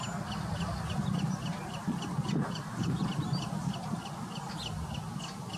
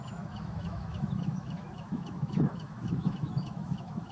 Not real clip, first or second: second